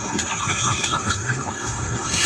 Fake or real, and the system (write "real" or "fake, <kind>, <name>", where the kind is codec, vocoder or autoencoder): fake, codec, SNAC